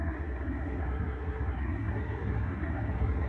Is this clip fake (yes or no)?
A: yes